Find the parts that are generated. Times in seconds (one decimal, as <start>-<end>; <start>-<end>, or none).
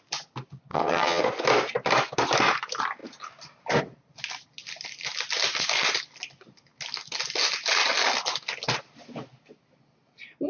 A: 0.7-1.2